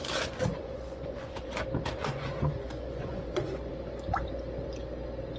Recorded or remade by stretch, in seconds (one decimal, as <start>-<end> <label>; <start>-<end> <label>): 0.0-1.3 remade; 1.3-2.0 recorded; 2.0-3.7 remade; 3.7-5.4 recorded